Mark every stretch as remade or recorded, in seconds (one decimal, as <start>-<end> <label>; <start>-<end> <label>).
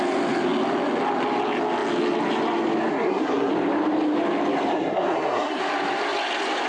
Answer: 0.0-2.9 recorded; 2.9-3.5 remade; 3.5-4.7 recorded; 4.7-5.6 remade; 5.6-6.7 recorded